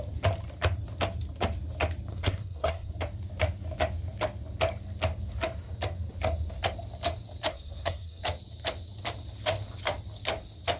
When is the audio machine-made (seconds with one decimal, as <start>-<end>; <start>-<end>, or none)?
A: 2.1-2.9; 7.5-8.2